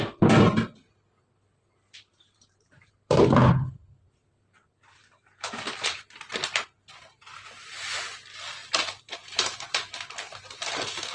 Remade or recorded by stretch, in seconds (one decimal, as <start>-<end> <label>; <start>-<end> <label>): 0.0-2.1 recorded; 2.1-3.2 remade; 3.2-5.0 recorded; 5.0-5.7 remade; 5.7-8.6 recorded; 8.6-9.9 remade; 9.9-11.1 recorded